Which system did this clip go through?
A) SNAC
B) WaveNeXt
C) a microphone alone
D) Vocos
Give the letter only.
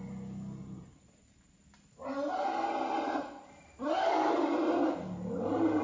C